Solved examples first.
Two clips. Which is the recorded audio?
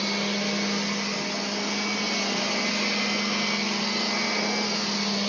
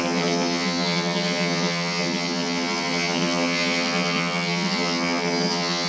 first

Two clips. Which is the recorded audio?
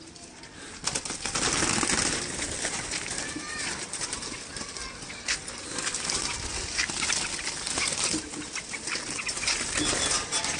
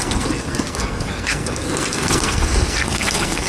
first